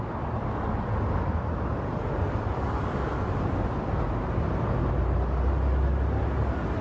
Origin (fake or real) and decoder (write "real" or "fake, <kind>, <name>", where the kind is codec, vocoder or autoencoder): real